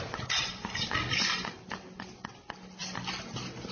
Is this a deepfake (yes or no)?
no